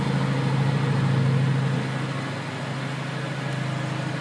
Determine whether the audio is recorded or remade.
recorded